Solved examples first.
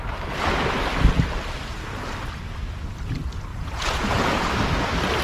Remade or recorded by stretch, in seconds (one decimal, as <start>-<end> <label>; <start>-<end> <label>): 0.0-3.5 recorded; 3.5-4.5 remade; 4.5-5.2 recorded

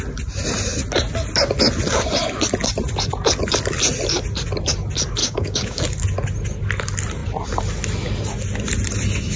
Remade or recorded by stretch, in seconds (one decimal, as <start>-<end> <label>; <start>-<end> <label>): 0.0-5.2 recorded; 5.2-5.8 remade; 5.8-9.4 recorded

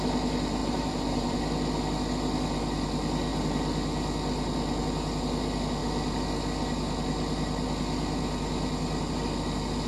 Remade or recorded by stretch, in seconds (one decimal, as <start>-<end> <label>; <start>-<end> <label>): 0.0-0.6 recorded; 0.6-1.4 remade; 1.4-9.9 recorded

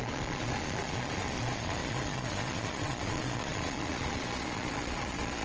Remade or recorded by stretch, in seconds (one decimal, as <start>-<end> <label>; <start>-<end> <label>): 0.0-5.4 remade

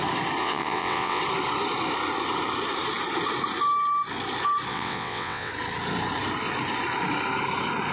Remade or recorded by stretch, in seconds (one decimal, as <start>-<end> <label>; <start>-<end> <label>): 0.0-0.4 recorded; 0.4-1.2 remade; 1.2-4.7 recorded; 4.7-5.5 remade; 5.5-7.9 recorded

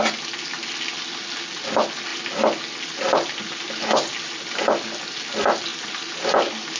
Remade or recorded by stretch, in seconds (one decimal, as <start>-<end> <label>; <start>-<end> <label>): 0.0-6.8 recorded

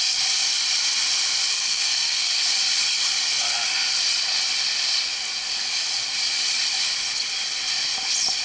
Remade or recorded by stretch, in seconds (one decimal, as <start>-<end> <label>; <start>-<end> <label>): 0.0-1.5 recorded; 1.5-2.3 remade; 2.3-8.4 recorded